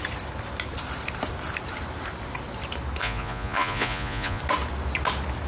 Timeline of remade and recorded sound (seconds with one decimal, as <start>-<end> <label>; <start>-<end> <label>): 0.0-3.0 recorded; 3.0-4.4 remade; 4.4-5.5 recorded